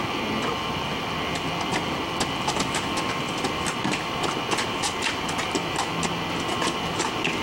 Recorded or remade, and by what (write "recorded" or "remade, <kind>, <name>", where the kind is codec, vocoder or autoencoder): recorded